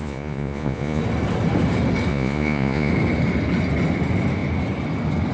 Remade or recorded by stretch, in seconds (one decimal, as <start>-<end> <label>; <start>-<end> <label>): 0.0-1.0 remade; 1.0-2.1 recorded; 2.1-2.9 remade; 2.9-5.3 recorded